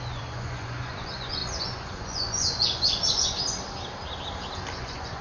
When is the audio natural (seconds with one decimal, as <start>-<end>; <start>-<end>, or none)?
3.4-4.7